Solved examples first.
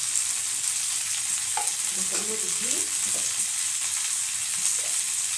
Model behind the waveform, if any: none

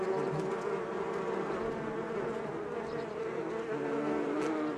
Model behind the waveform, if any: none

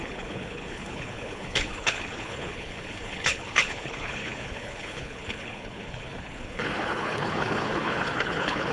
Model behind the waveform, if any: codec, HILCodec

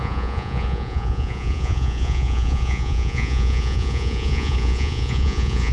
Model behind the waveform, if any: vocoder, Vocos